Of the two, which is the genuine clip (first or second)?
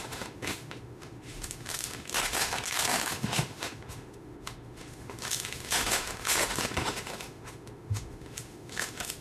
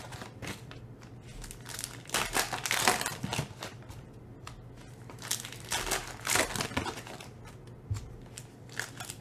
second